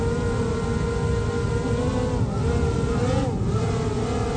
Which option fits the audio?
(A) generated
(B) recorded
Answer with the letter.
B